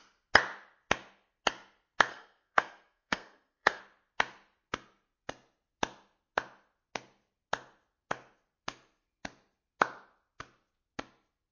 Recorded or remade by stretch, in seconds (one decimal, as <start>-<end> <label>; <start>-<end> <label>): 0.0-2.1 recorded; 2.1-3.8 remade; 3.8-11.5 recorded